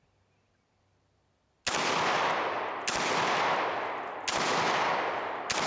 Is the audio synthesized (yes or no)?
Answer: no